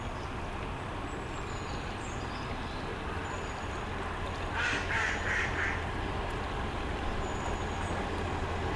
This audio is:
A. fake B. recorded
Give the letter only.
B